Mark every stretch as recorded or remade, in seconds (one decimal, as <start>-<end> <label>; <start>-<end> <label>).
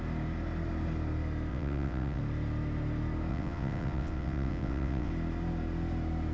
0.0-1.5 recorded; 1.5-2.2 remade; 2.2-3.3 recorded; 3.3-5.1 remade; 5.1-6.3 recorded